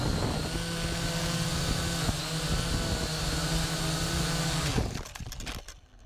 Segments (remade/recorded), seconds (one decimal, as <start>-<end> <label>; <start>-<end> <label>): 0.0-4.7 recorded; 4.7-5.2 remade; 5.2-6.1 recorded